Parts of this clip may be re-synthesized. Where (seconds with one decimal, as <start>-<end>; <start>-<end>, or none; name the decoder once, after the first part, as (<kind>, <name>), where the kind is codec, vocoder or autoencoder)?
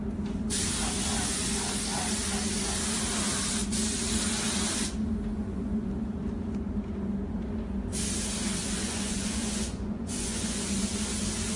5.3-5.9 (vocoder, Vocos); 8.6-10.7